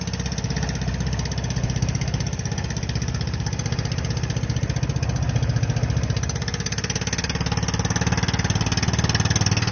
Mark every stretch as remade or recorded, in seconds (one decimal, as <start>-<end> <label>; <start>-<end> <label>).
0.0-1.6 recorded; 1.6-4.1 remade; 4.1-9.7 recorded